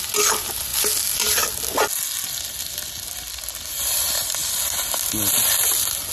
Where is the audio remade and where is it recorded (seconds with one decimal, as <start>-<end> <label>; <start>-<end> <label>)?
0.0-6.1 recorded